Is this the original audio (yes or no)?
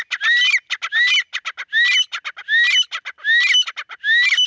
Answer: yes